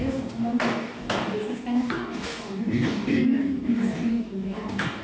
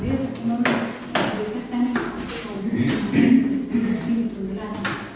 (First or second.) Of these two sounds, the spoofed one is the first